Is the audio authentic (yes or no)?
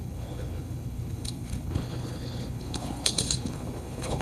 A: no